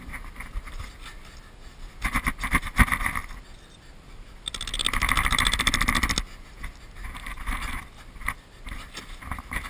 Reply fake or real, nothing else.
real